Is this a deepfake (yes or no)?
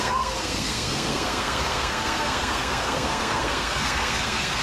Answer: yes